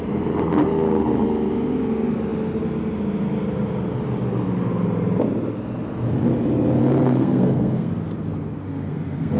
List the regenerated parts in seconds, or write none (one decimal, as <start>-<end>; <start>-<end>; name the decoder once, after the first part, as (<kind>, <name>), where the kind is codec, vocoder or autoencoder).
6.8-7.9 (codec, SNAC); 8.6-9.4